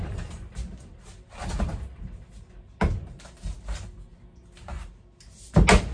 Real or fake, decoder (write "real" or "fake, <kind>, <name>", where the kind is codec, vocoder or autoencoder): real